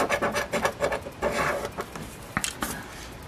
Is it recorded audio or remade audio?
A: recorded